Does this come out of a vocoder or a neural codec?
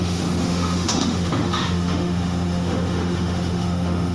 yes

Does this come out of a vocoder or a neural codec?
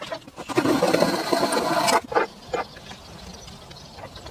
no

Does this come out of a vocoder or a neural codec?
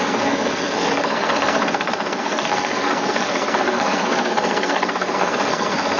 yes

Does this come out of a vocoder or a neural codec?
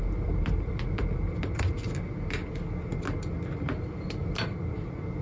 no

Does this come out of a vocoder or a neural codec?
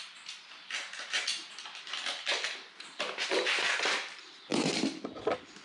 no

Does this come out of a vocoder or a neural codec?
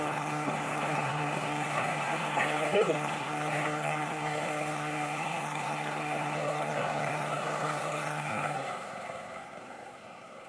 yes